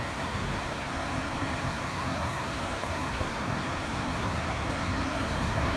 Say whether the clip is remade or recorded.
remade